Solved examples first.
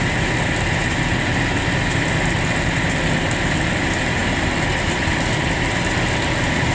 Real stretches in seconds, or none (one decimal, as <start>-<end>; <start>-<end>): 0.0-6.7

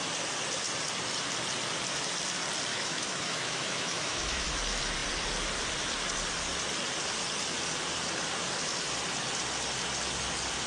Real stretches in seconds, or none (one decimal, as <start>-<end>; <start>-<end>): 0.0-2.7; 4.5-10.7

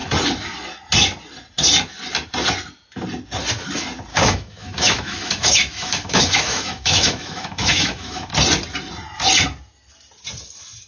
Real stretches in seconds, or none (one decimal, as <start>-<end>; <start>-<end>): 0.0-4.1; 8.3-10.9

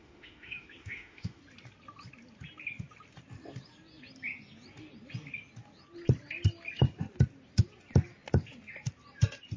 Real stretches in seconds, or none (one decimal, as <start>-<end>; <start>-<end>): 1.4-9.6

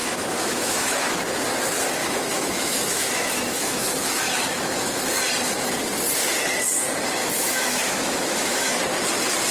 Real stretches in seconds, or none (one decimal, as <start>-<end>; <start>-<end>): 1.2-2.0; 5.2-7.2; 8.8-9.5

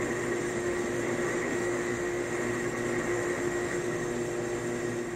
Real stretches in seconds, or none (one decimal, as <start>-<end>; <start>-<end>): 0.0-0.5; 1.0-1.5; 2.3-3.1; 3.8-5.2

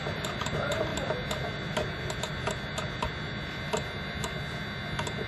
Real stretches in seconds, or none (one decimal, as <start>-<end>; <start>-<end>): 0.0-5.3